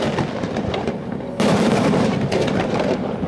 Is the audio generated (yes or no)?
no